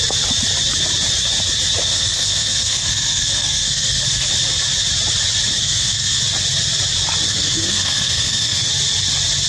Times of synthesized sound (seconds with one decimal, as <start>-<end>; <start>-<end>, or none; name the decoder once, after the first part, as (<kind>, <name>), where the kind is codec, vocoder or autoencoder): 1.9-4.3 (codec, SNAC); 5.6-6.2; 7.3-8.7